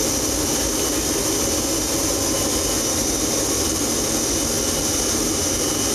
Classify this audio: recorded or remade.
recorded